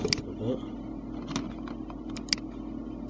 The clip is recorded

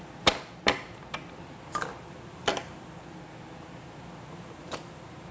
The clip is recorded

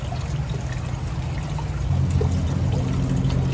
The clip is recorded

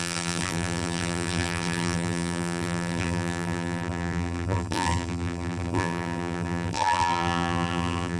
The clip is remade